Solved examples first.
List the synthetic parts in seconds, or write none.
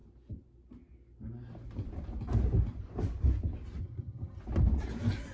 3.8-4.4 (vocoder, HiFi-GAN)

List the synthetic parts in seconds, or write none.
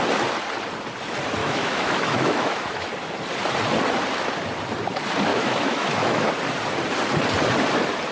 1.4-2.9 (autoencoder, DAC-VAE); 5.3-6.3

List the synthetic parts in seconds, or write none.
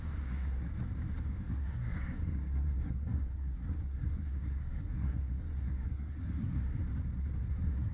0.0-0.7 (codec, SNAC); 1.5-6.8; 7.5-7.9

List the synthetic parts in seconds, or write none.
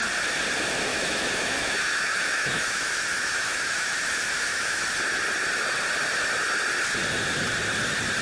0.9-4.8 (autoencoder, DAC-VAE)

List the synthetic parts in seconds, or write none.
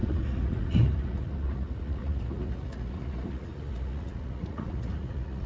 0.0-5.5 (vocoder, Vocos)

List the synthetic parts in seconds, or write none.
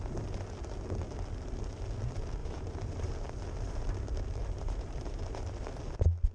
2.4-3.1 (vocoder, BigVGAN v2); 4.4-5.6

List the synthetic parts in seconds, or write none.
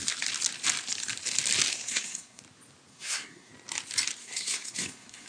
1.7-2.4 (codec, SNAC); 2.9-3.5; 4.2-5.3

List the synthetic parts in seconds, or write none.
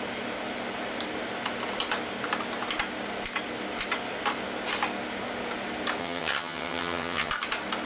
6.0-7.3 (vocoder, HiFi-GAN)